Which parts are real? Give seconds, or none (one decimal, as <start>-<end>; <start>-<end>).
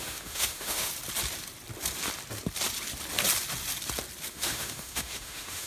0.9-4.3